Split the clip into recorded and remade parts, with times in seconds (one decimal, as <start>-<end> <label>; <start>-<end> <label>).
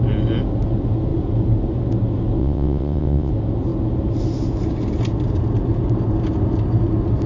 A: 0.0-2.4 recorded; 2.4-3.3 remade; 3.3-7.3 recorded